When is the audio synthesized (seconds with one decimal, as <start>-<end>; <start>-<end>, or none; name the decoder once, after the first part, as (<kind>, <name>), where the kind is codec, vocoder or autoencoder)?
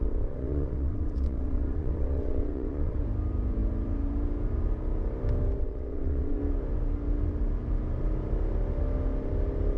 0.0-3.0 (vocoder, WaveNeXt); 5.6-6.4